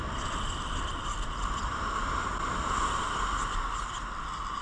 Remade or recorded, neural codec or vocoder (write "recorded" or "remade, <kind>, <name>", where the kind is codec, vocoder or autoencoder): recorded